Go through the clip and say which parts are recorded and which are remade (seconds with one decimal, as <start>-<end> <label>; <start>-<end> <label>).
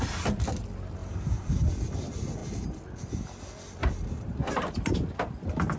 0.0-1.0 recorded; 1.0-1.7 remade; 1.7-3.8 recorded; 3.8-4.7 remade; 4.7-5.8 recorded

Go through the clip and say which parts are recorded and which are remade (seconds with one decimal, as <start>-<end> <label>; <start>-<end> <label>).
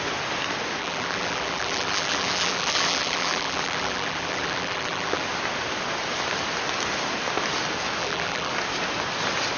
0.0-0.8 recorded; 0.8-5.2 remade; 5.2-8.0 recorded; 8.0-8.5 remade; 8.5-9.6 recorded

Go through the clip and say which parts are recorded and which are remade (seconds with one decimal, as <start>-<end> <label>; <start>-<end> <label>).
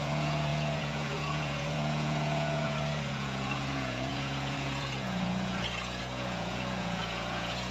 0.0-7.7 remade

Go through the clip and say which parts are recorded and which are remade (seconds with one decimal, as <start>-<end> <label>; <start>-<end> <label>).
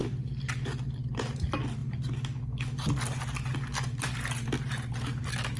0.0-5.6 recorded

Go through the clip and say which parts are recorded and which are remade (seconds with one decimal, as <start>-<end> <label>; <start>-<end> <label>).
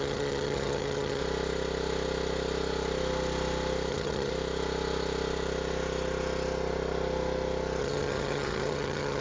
0.0-1.2 remade; 1.2-3.9 recorded; 3.9-4.3 remade; 4.3-7.8 recorded; 7.8-9.2 remade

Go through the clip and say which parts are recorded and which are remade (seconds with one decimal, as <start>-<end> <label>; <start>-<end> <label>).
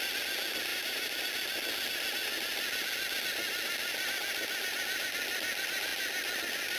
0.0-0.7 recorded; 0.7-1.2 remade; 1.2-6.8 recorded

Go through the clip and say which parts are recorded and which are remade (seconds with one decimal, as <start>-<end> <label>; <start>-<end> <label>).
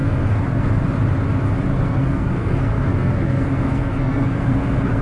0.0-0.7 remade; 0.7-1.7 recorded; 1.7-5.0 remade